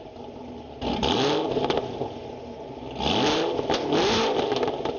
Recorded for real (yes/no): yes